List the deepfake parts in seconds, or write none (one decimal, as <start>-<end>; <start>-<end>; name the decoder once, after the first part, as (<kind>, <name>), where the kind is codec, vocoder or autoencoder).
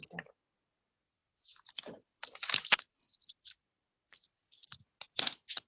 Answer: 1.2-4.6 (vocoder, BigVGAN v2)